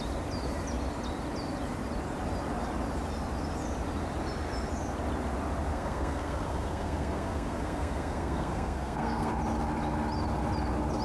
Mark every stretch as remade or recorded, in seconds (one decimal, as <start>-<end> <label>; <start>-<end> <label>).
0.0-5.7 recorded; 5.7-9.3 remade; 9.3-11.0 recorded